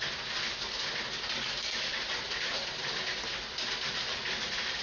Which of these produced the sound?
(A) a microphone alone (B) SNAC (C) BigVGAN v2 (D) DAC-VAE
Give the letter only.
A